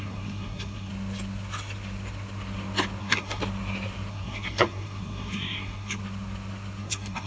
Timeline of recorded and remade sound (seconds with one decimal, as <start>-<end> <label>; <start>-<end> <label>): 0.0-0.9 remade; 0.9-3.0 recorded; 3.0-3.4 remade; 3.4-4.1 recorded; 4.1-6.0 remade; 6.0-6.8 recorded; 6.8-7.3 remade